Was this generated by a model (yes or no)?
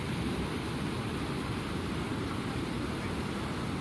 no